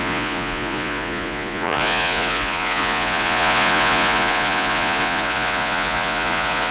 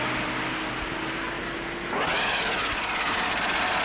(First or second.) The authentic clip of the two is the second